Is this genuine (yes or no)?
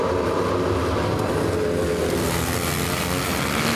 yes